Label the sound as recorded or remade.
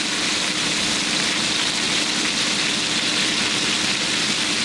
recorded